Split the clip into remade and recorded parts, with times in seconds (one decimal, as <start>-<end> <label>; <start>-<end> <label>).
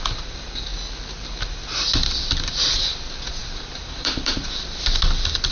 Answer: 0.0-3.4 recorded; 3.4-4.5 remade; 4.5-5.5 recorded